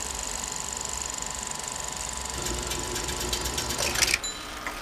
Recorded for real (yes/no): yes